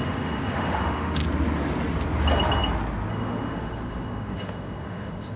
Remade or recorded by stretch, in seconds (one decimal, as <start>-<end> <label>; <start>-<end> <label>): 0.0-1.2 remade; 1.2-3.1 recorded; 3.1-5.4 remade